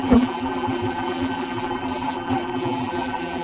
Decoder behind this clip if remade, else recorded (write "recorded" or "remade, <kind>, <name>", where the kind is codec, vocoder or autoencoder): remade, vocoder, BigVGAN v2